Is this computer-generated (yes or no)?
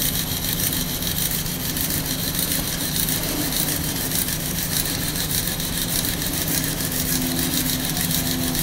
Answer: no